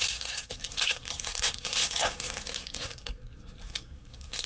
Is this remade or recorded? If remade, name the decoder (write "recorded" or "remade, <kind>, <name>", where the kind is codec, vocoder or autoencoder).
remade, codec, SNAC